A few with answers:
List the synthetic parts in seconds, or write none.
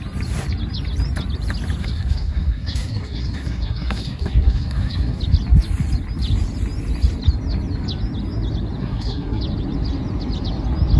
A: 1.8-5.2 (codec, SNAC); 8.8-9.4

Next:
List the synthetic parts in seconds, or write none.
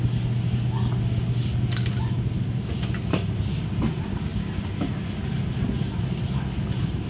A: none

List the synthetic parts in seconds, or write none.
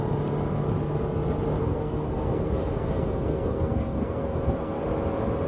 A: 1.6-4.8 (codec, SNAC)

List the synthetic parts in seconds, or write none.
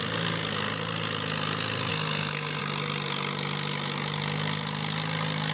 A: 1.9-2.6 (codec, SNAC)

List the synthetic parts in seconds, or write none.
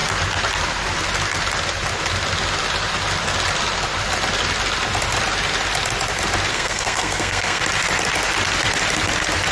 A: 6.5-7.6 (codec, SNAC)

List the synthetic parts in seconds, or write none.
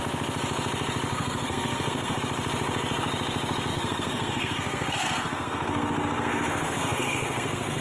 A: 1.1-2.2 (codec, SNAC); 3.7-7.8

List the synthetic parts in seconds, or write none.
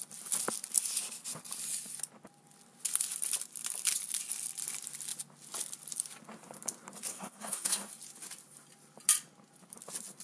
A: 7.1-7.9 (codec, SNAC)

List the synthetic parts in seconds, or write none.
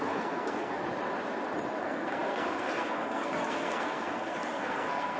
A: 0.0-0.8 (codec, SNAC); 1.8-5.2